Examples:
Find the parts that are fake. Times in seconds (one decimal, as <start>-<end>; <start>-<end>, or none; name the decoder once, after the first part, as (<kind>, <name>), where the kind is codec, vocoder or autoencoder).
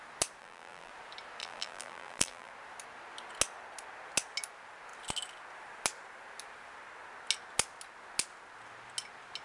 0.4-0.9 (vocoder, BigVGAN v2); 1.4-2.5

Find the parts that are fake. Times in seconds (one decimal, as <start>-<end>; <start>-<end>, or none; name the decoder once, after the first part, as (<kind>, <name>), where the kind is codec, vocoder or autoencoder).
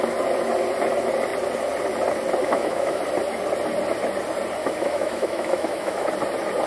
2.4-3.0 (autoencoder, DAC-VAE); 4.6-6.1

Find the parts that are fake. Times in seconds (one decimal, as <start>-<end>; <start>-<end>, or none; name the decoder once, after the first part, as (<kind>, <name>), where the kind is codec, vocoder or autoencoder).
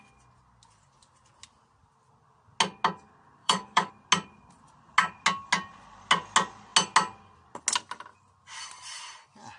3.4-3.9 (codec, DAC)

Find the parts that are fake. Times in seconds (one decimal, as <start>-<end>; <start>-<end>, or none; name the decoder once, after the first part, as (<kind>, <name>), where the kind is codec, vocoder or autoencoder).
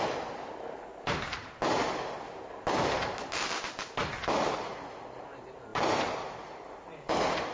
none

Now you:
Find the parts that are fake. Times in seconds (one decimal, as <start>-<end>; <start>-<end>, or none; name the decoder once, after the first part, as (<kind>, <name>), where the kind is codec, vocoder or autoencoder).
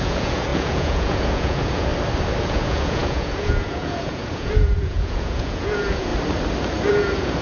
0.0-1.9 (vocoder, Vocos); 2.4-6.1; 6.9-7.4